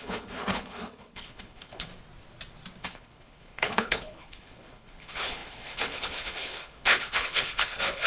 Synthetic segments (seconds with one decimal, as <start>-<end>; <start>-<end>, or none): 0.0-1.9; 2.8-8.1